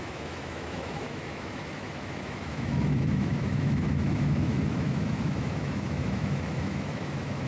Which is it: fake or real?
fake